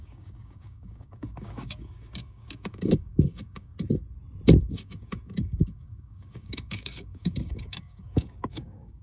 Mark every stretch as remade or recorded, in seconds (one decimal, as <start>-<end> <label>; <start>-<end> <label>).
0.0-3.7 remade; 3.7-4.6 recorded; 4.6-9.0 remade